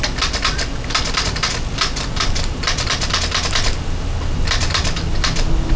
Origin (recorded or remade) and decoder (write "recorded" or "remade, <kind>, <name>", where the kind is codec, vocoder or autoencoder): recorded